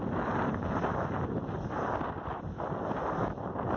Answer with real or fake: real